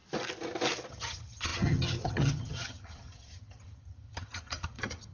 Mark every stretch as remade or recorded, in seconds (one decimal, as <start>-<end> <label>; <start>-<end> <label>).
0.0-0.9 recorded; 0.9-5.1 remade